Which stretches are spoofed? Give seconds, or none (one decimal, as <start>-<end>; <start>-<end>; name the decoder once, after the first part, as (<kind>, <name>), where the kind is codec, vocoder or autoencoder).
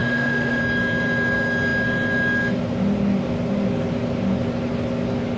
0.0-0.6 (autoencoder, DAC-VAE)